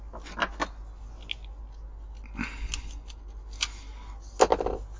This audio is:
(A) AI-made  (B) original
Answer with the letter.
B